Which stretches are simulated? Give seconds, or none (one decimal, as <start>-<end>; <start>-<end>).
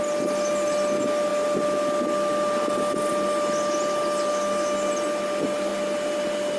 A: 4.3-4.9